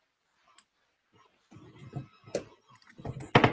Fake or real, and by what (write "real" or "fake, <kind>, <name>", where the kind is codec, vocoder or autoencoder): real